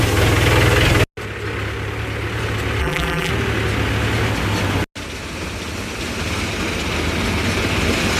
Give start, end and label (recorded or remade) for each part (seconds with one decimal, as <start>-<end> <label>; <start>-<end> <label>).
0.0-2.8 recorded; 2.8-3.3 remade; 3.3-8.2 recorded